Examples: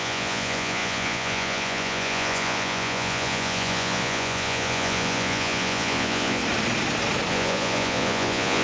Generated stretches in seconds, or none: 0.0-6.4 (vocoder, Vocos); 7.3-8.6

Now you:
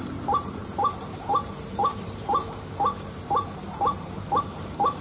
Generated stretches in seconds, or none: 0.0-0.6 (vocoder, BigVGAN v2); 1.6-2.4; 4.4-5.0

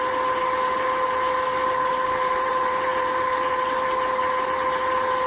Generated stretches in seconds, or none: none